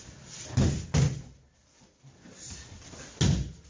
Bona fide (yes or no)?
yes